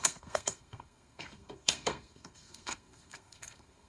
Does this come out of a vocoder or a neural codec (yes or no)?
yes